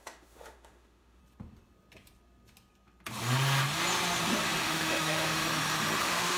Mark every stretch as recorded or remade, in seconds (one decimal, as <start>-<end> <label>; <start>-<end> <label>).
0.0-1.2 remade; 1.2-4.6 recorded; 4.6-5.4 remade; 5.4-6.0 recorded; 6.0-6.4 remade